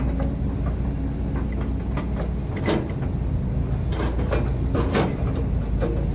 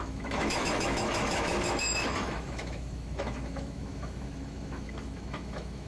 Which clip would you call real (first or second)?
first